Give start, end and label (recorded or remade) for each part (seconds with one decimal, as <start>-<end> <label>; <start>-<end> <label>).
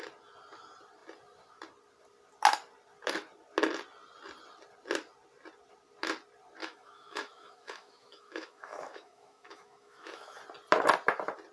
0.0-6.6 recorded; 6.6-10.4 remade; 10.4-11.5 recorded